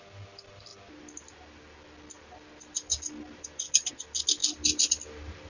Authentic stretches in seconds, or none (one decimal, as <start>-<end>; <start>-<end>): 0.0-5.5